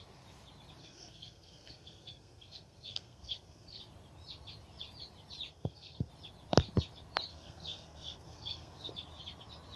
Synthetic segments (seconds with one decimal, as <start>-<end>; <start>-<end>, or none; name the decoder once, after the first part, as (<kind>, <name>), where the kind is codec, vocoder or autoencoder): 0.8-3.8 (codec, SNAC); 5.5-6.1; 7.3-8.9